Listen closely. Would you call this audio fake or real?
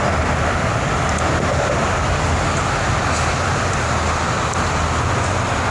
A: real